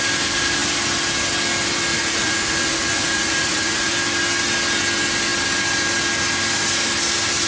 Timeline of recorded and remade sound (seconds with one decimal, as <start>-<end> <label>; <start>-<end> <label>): 0.0-1.9 recorded; 1.9-3.9 remade; 3.9-7.5 recorded